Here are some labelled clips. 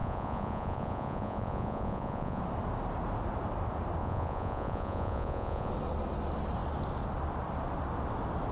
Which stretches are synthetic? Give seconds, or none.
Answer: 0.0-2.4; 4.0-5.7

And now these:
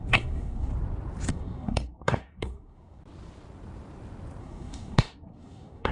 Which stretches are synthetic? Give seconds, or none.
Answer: 0.0-0.7; 1.3-3.0; 4.4-5.9